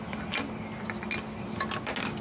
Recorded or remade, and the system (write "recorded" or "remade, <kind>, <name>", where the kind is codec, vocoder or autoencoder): recorded